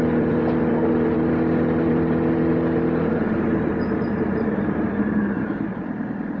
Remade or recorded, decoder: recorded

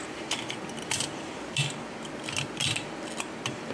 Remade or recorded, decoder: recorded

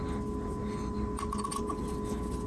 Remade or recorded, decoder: recorded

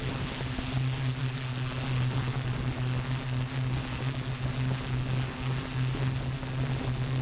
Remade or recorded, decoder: recorded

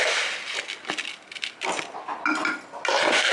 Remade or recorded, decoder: recorded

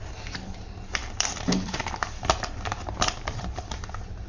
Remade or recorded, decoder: remade, vocoder, BigVGAN v2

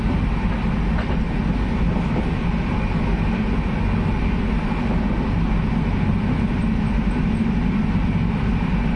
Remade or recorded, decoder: recorded